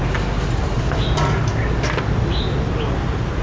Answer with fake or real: real